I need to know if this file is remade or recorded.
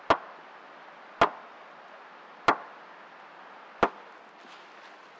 recorded